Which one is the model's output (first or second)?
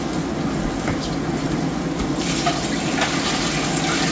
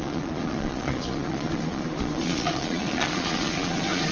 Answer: second